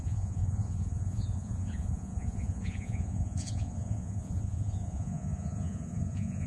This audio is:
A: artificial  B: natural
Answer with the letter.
A